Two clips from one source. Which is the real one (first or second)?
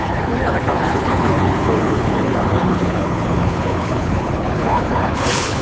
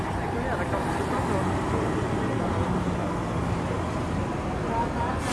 second